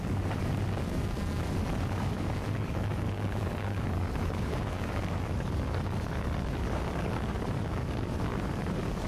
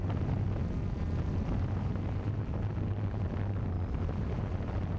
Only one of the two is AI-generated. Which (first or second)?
first